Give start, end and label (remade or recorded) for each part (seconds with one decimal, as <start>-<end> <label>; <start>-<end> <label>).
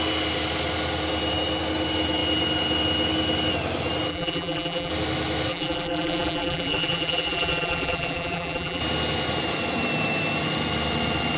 0.0-4.1 recorded; 4.1-4.9 remade; 4.9-5.5 recorded; 5.5-8.8 remade; 8.8-11.4 recorded